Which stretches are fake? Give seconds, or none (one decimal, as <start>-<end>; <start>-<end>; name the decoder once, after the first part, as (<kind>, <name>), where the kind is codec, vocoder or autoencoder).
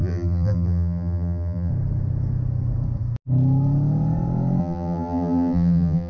0.0-1.7 (vocoder, BigVGAN v2); 4.6-6.1